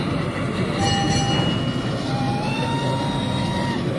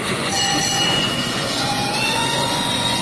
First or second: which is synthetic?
second